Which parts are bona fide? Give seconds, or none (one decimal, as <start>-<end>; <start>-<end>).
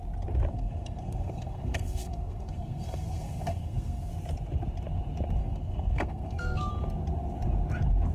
0.0-0.5; 4.1-5.4; 6.7-8.1